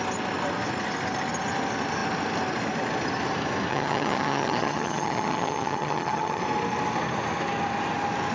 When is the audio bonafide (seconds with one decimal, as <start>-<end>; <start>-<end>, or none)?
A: 0.0-3.7; 6.4-8.3